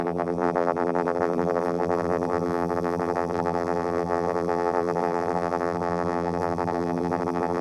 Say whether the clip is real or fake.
fake